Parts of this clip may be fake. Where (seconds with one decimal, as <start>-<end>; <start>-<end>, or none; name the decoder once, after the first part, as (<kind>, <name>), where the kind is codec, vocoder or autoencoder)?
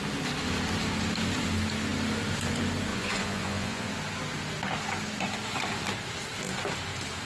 2.9-3.9 (vocoder, Vocos)